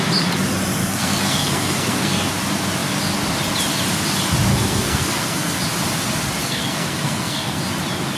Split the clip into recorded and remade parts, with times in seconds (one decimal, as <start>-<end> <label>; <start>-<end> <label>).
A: 0.0-0.8 recorded; 0.8-2.3 remade; 2.3-4.5 recorded; 4.5-5.6 remade; 5.6-6.4 recorded; 6.4-7.6 remade; 7.6-8.2 recorded